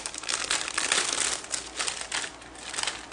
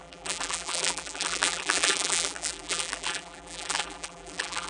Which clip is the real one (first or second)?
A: first